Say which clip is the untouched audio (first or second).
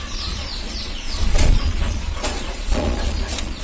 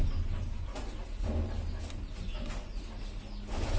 second